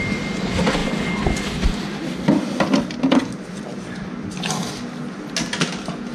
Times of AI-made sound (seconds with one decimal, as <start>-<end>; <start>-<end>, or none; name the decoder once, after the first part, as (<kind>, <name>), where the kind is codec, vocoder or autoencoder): none

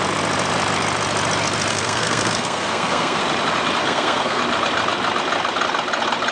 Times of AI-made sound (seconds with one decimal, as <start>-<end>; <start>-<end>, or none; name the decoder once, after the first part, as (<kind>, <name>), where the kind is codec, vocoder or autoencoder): 1.7-3.2 (codec, SNAC); 3.8-4.4

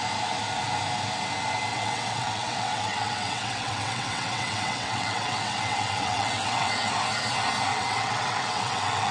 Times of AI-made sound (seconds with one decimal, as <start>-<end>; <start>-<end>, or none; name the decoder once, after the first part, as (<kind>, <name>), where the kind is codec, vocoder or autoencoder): 1.7-6.9 (vocoder, WaveNeXt); 7.7-9.1

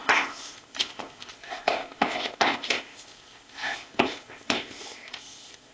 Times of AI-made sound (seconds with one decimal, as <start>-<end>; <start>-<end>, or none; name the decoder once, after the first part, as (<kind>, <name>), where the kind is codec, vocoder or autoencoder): 0.0-5.7 (codec, ZipCodec)